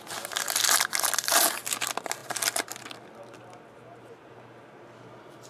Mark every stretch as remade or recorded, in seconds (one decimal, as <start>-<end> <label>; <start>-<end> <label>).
0.0-5.5 recorded